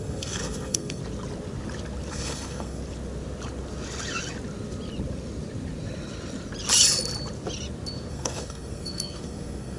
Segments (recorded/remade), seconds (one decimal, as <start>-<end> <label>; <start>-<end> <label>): 0.0-1.0 remade; 1.0-2.1 recorded; 2.1-2.8 remade; 2.8-8.1 recorded; 8.1-9.8 remade